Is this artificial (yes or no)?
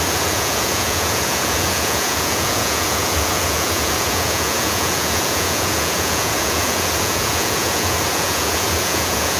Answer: yes